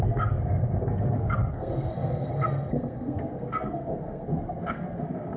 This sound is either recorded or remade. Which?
remade